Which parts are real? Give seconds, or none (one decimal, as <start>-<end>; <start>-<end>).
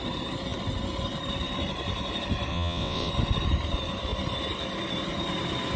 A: 0.0-2.5; 3.1-5.8